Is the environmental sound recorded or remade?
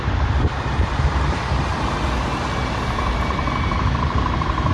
remade